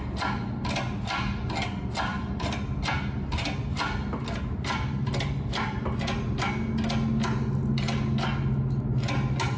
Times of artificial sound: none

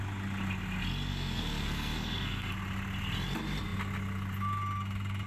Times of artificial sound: 1.1-2.5 (codec, SNAC)

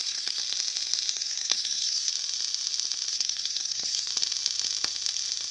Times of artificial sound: 0.0-0.4 (codec, SNAC); 1.1-2.1; 3.1-4.1

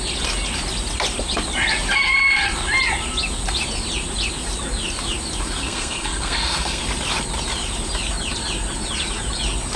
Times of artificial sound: 5.6-6.8 (codec, SNAC)

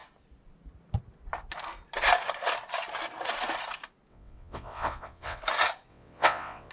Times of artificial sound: 4.1-5.4 (vocoder, WaveNeXt); 5.9-6.7

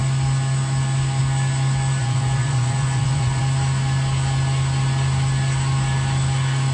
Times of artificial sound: 2.0-3.4 (vocoder, Vocos)